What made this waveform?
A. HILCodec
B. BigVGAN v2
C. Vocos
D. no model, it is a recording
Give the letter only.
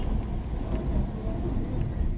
D